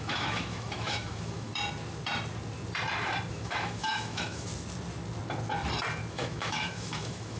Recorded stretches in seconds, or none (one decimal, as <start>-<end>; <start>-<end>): 1.5-3.3; 4.5-6.1